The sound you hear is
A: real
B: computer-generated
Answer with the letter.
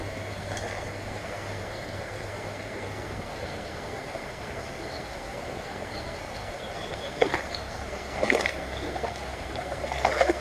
B